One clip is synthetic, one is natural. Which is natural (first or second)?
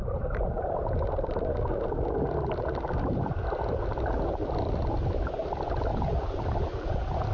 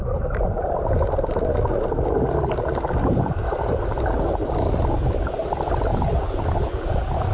second